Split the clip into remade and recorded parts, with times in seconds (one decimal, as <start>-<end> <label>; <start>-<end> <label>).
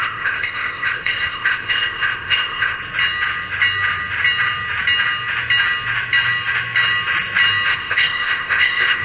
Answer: 0.0-2.8 remade; 2.8-7.7 recorded; 7.7-9.0 remade